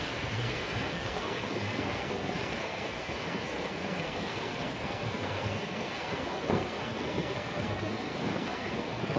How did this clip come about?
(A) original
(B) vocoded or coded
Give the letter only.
B